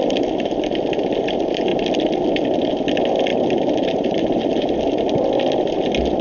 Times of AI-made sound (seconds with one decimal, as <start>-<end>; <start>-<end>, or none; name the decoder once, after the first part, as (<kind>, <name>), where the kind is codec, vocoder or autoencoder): 3.3-4.5 (vocoder, BigVGAN v2)